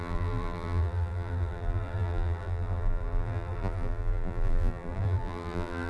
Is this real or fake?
fake